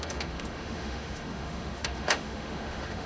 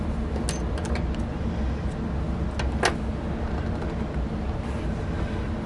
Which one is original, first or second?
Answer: second